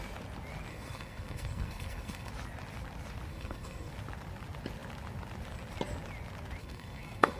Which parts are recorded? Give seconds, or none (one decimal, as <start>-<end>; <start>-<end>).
0.0-0.7; 2.3-3.3; 3.9-6.6